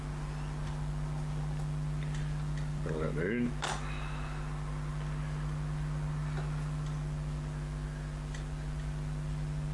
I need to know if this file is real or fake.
real